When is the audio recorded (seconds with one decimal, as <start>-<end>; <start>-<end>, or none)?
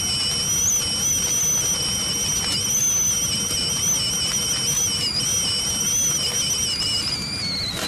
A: 0.0-7.9